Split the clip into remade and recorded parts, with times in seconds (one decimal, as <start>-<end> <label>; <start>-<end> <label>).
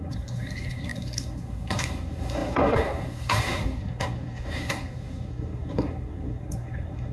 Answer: 0.0-7.1 remade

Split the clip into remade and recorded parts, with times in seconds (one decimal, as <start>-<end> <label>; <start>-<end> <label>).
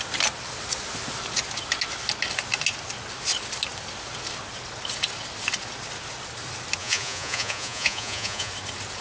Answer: 0.0-6.8 recorded; 6.8-8.5 remade; 8.5-9.0 recorded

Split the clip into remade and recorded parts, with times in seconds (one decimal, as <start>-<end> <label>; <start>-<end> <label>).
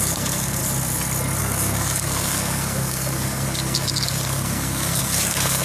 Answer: 0.0-0.6 remade; 0.6-1.4 recorded; 1.4-5.6 remade